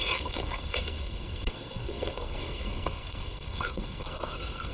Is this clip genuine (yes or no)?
no